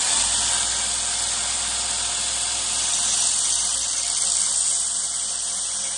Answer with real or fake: real